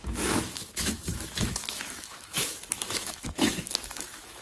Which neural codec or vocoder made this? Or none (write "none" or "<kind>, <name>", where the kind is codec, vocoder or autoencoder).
autoencoder, DAC-VAE